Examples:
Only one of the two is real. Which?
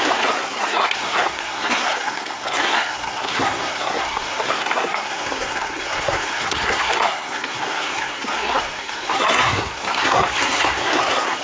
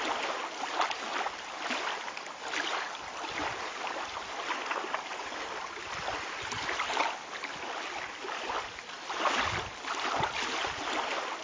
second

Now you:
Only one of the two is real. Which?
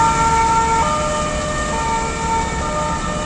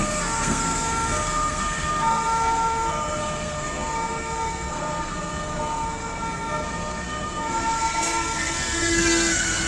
first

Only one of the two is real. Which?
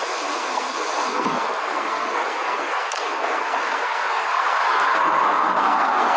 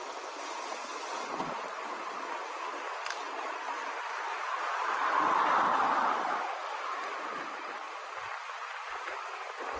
second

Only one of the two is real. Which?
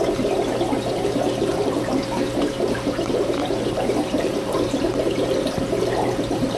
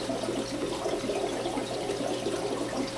second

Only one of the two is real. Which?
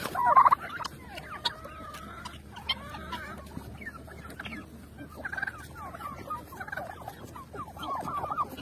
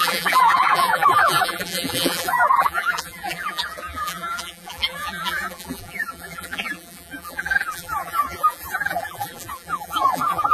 first